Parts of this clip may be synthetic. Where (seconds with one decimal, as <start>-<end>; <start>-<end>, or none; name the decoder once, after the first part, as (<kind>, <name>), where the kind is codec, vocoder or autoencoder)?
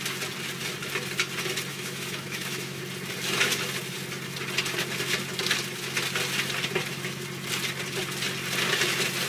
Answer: 1.7-2.8 (autoencoder, DAC-VAE)